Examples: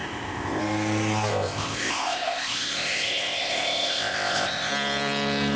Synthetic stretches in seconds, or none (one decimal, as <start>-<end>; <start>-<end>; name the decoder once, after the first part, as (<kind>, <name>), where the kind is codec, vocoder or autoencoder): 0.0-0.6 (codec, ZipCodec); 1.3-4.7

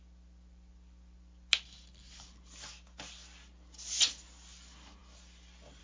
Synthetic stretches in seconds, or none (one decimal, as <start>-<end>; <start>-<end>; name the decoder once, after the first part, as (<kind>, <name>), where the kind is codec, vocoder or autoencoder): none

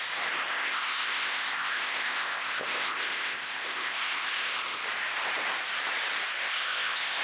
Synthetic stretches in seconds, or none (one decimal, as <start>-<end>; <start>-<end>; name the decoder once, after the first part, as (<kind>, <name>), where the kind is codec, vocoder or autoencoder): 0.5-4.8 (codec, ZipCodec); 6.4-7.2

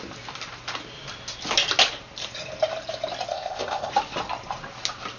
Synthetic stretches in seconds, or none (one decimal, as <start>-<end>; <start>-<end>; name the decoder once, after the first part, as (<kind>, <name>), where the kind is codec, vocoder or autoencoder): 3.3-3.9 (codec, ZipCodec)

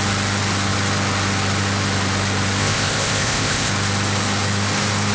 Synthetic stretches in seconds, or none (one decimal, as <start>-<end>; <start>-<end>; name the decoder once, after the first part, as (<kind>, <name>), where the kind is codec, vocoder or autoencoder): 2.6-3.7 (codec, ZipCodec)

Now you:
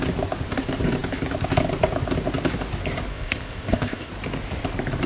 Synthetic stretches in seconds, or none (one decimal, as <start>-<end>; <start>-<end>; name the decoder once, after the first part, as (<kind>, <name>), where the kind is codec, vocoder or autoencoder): 3.1-4.1 (codec, ZipCodec)